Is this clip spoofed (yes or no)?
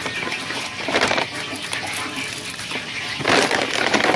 no